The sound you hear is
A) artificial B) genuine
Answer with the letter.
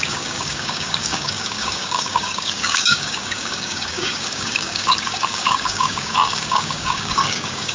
A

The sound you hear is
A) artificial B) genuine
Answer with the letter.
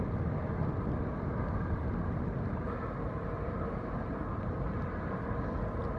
B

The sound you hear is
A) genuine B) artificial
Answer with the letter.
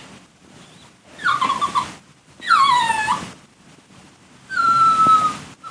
A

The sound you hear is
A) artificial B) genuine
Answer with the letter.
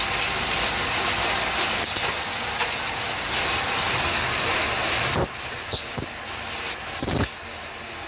B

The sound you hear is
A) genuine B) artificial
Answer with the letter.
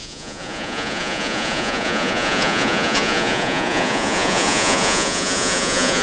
B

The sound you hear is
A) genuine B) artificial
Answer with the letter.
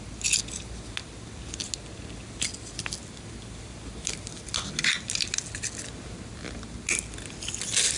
A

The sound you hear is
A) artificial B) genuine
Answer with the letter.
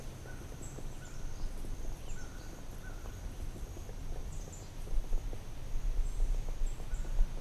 B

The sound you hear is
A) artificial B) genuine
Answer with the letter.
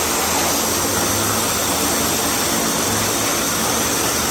B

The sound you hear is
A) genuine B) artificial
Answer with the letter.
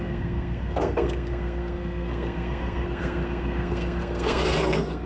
B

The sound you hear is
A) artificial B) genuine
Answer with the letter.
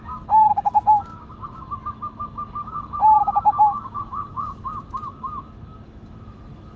A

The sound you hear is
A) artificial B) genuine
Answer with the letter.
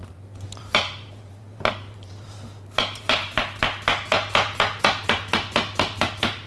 A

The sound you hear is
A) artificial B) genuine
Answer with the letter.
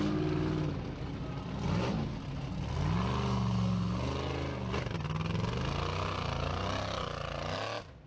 B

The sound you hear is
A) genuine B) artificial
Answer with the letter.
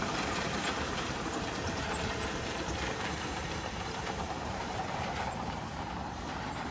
B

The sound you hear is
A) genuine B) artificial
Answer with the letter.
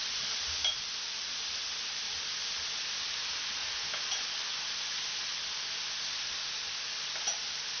A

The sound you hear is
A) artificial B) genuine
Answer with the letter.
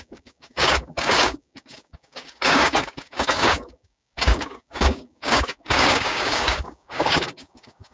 A